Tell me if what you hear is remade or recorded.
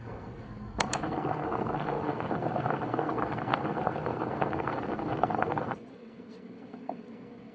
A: remade